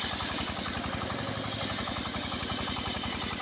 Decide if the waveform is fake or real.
fake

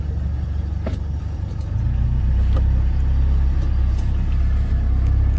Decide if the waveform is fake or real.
real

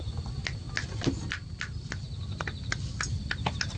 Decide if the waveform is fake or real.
real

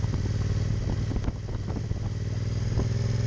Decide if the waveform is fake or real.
real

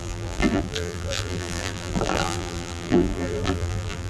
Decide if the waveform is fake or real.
fake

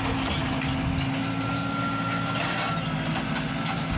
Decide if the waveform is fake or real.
real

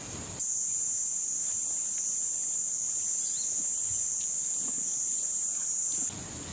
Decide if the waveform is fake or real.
real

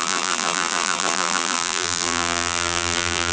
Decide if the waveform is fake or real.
fake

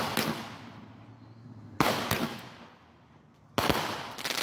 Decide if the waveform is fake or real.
real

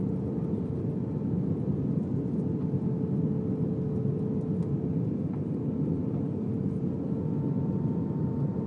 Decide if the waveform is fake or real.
real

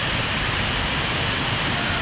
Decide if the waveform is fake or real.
real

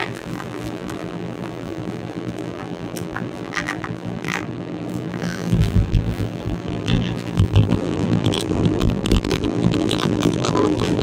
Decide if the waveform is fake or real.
fake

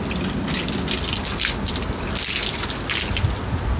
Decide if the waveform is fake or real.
real